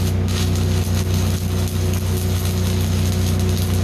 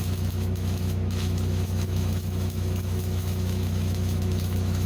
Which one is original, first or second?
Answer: first